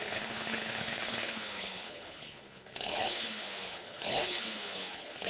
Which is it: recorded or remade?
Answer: remade